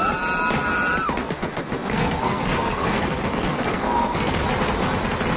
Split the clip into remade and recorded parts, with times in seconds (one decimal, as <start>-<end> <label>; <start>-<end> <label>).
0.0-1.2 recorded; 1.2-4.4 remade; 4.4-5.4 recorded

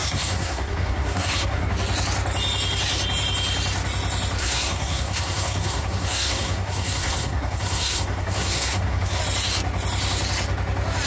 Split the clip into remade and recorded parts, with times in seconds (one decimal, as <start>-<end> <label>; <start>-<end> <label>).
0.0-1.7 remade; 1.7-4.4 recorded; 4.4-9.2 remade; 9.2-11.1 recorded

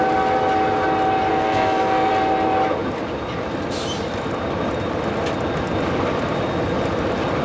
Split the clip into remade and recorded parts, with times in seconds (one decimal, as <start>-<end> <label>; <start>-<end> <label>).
0.0-1.3 recorded; 1.3-2.1 remade; 2.1-7.4 recorded